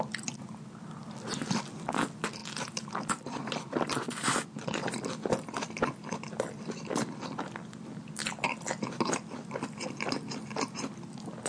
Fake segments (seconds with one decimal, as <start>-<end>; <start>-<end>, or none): none

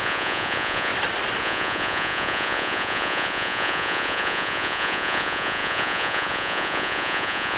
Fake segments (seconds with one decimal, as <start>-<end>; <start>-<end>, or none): 0.0-0.9; 1.4-7.6

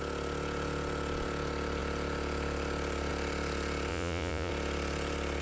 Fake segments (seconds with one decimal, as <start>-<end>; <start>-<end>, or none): 3.9-4.5

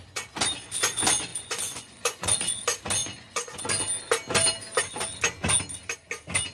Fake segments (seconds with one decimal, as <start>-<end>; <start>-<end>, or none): 1.3-2.6; 3.0-3.6

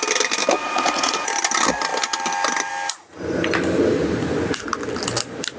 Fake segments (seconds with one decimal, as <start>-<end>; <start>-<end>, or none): 0.6-1.3